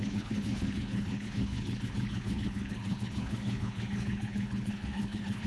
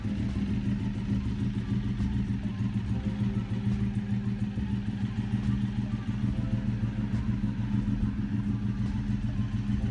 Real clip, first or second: second